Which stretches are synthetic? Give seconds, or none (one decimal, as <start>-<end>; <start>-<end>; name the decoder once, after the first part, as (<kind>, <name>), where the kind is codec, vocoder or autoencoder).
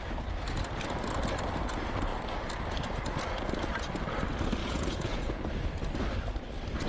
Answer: 4.6-5.4 (vocoder, Vocos)